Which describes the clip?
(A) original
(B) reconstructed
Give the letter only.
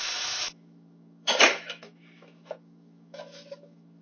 B